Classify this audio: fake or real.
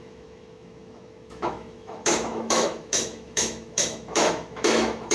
fake